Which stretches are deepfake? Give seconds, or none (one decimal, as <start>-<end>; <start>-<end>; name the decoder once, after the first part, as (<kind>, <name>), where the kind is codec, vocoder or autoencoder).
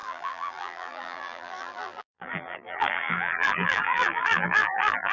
0.0-5.1 (vocoder, BigVGAN v2)